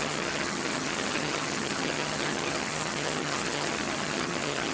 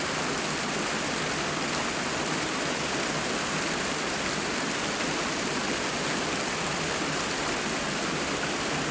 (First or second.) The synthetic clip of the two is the first